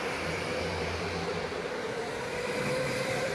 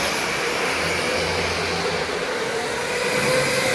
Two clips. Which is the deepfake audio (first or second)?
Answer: first